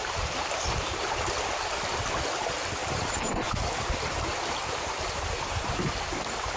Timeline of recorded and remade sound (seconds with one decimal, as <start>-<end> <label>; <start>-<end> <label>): 0.0-1.2 remade; 1.2-2.8 recorded; 2.8-5.9 remade; 5.9-6.6 recorded